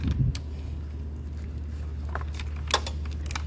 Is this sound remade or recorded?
recorded